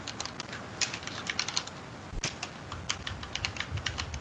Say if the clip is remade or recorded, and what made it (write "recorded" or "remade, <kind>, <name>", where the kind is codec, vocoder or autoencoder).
recorded